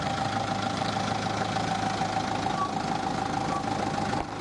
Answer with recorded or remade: recorded